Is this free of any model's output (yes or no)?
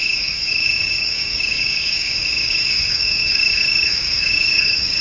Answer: no